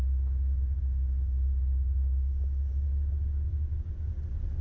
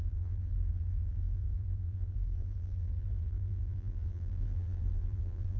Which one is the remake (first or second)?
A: second